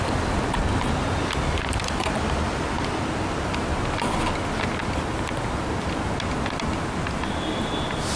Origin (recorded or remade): recorded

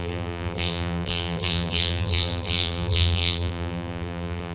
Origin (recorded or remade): remade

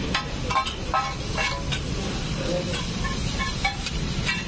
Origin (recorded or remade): recorded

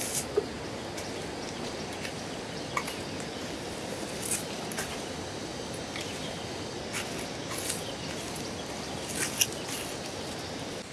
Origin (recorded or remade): recorded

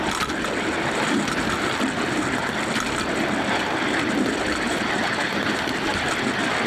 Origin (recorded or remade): recorded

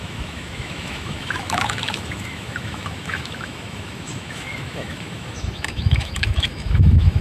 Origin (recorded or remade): remade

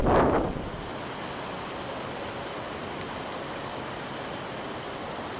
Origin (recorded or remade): recorded